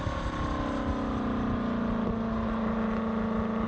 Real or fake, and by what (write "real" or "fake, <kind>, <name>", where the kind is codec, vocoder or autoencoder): real